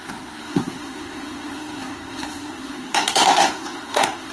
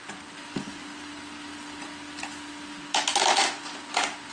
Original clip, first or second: second